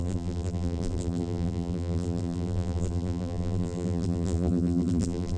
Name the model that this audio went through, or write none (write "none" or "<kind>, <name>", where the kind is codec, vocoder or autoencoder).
vocoder, BigVGAN v2